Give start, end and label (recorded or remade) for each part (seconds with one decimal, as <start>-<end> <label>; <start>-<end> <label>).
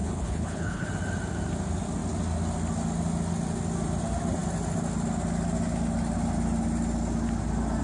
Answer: 0.0-0.9 remade; 0.9-7.8 recorded